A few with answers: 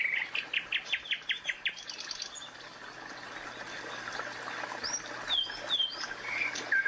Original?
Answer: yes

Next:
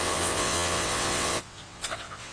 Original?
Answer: no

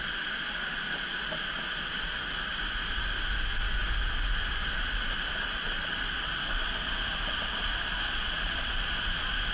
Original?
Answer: yes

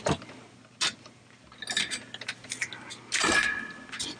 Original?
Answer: yes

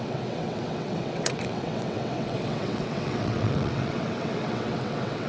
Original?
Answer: no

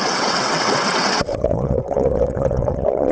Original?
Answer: no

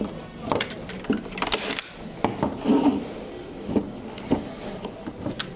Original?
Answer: yes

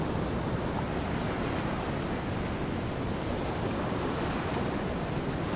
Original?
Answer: yes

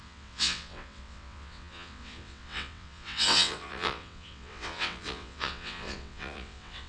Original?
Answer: no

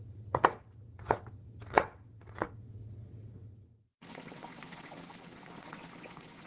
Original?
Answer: no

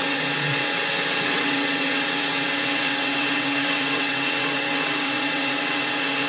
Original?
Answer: no